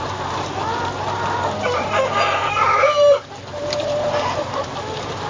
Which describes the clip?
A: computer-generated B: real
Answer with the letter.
A